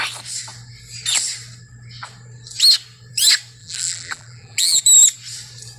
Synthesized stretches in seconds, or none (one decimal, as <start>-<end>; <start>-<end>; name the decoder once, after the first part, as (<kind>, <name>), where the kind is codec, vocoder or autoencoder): 3.6-4.8 (vocoder, BigVGAN v2)